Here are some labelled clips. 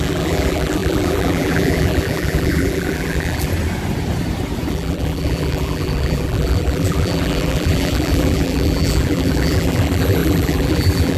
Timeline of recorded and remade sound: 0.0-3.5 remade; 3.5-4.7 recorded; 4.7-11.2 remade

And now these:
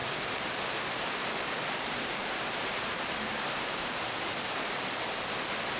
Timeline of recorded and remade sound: 0.0-0.7 remade; 0.7-1.2 recorded; 1.2-4.0 remade; 4.0-5.8 recorded